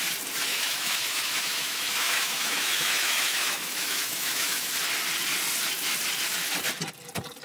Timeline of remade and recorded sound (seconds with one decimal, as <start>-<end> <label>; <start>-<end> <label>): 0.0-0.5 recorded; 0.5-4.7 remade; 4.7-7.4 recorded